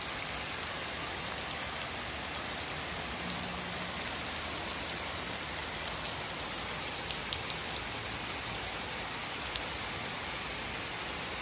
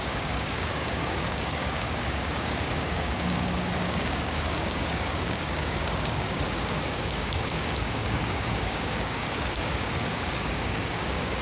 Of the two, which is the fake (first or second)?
second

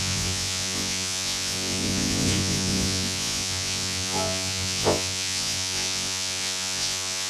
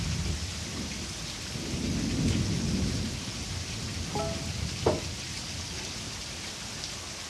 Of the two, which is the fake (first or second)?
first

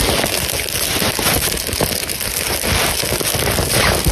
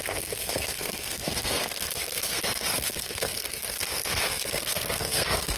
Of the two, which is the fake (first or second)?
second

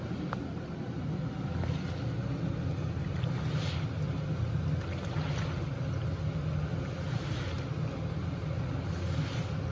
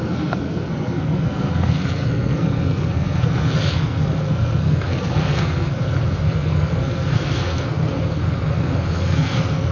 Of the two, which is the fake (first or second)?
second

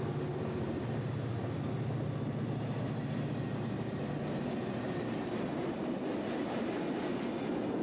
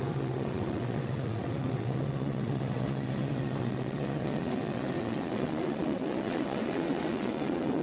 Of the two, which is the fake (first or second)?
second